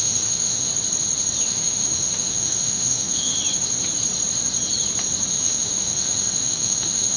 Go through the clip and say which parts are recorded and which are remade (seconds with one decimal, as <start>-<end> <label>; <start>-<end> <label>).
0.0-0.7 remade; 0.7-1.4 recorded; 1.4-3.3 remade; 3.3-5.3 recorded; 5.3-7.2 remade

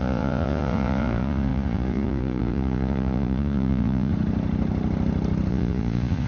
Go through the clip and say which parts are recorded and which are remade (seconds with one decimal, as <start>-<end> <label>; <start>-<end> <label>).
0.0-4.1 remade; 4.1-5.5 recorded; 5.5-6.3 remade

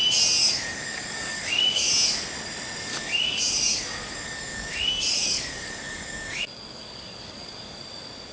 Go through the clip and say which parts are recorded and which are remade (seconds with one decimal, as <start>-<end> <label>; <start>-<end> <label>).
0.0-0.4 recorded; 0.4-1.9 remade; 1.9-2.9 recorded; 2.9-7.8 remade; 7.8-8.3 recorded

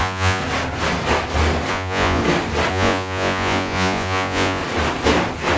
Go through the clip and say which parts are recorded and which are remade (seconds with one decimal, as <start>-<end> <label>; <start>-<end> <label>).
0.0-0.4 remade; 0.4-1.7 recorded; 1.7-2.2 remade; 2.2-2.7 recorded; 2.7-4.6 remade; 4.6-5.6 recorded